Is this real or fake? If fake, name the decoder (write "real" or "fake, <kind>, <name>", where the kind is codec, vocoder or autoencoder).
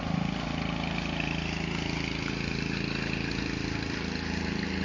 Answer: real